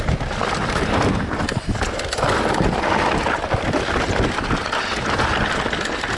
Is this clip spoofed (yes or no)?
no